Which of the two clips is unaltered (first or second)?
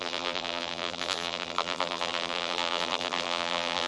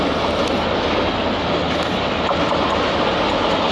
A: second